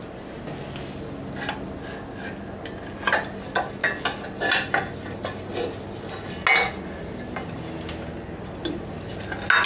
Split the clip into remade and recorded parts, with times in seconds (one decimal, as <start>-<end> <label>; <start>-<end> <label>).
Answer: 0.0-9.7 recorded